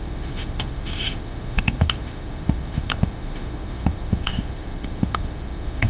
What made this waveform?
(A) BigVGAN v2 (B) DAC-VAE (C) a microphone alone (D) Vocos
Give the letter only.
B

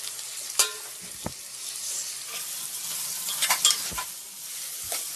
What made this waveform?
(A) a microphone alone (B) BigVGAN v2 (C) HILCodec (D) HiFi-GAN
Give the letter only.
B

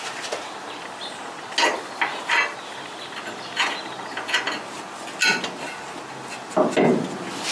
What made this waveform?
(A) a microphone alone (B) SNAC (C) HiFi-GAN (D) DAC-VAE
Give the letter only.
A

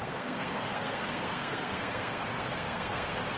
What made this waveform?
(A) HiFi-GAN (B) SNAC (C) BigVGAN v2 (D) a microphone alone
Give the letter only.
B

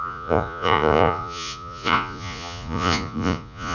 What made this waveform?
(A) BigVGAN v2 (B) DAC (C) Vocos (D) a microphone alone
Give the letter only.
C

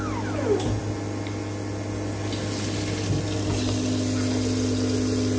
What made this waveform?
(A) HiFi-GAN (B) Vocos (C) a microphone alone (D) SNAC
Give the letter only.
C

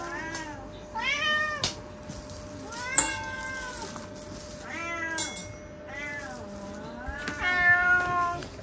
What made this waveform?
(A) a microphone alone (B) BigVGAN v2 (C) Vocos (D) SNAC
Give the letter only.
A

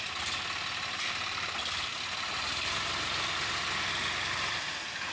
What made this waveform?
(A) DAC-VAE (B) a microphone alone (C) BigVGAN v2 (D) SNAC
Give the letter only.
B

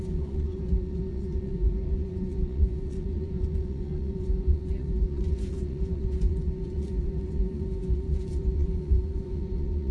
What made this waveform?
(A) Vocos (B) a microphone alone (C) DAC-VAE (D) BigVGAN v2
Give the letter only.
A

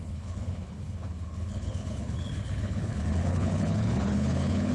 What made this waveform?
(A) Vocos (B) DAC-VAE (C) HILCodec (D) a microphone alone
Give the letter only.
C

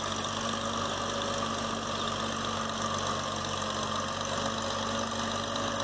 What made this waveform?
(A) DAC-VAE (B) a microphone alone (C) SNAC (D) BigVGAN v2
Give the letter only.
B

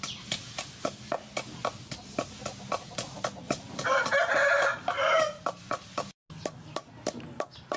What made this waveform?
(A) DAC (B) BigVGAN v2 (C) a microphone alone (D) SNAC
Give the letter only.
C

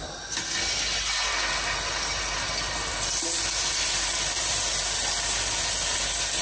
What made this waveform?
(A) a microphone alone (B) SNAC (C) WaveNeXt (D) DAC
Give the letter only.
A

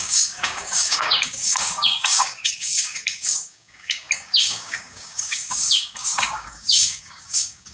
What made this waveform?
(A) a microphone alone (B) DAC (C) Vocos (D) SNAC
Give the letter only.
B